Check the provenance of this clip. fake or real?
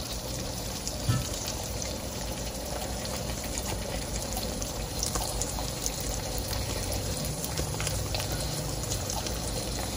fake